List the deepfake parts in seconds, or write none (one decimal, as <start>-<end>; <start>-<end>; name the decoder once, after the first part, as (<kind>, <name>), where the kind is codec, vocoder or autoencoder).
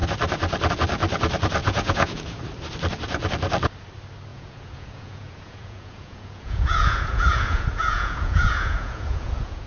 1.6-2.4 (vocoder, Vocos); 4.3-9.7